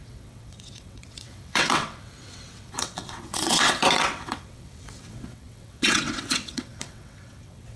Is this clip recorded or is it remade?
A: remade